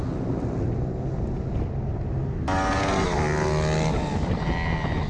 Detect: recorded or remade recorded